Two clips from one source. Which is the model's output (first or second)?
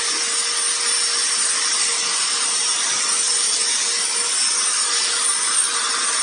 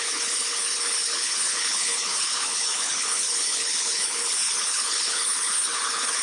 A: second